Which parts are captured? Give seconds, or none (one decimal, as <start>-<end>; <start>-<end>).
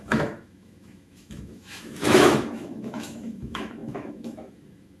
none